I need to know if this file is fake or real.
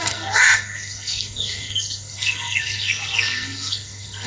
fake